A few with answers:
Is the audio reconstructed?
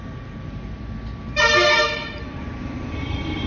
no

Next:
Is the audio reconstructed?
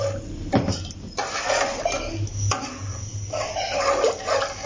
no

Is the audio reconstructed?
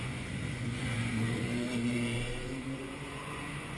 yes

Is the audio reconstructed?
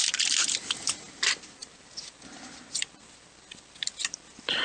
no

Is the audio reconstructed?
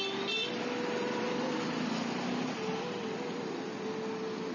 no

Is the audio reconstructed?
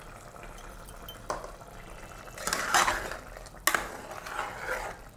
no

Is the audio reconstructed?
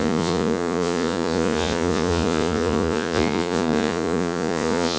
yes